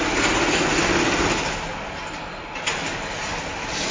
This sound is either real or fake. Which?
real